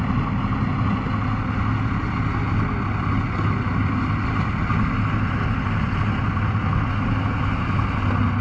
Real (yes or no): yes